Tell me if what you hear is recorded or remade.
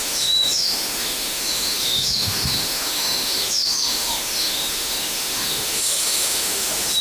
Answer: remade